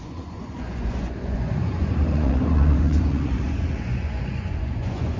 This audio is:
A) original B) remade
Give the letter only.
B